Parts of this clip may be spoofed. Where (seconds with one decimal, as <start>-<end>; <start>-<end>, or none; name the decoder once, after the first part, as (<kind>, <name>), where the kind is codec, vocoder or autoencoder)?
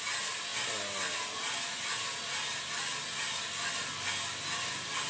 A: none